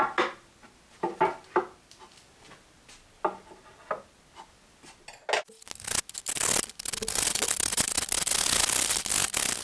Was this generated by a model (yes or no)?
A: no